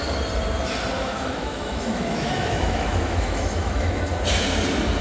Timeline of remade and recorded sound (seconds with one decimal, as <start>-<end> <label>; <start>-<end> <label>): 0.0-1.0 recorded; 1.0-4.0 remade; 4.0-5.0 recorded